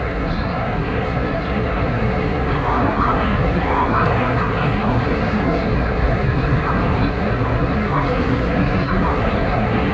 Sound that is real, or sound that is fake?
fake